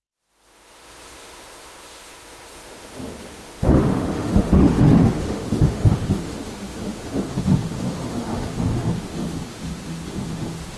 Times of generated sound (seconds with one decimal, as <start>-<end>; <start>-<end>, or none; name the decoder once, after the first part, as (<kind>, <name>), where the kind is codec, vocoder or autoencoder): 0.0-10.8 (autoencoder, DAC-VAE)